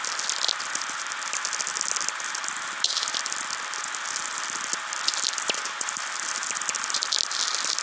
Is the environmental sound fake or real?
real